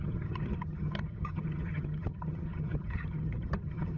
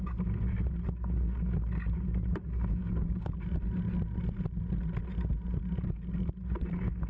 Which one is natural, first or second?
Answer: second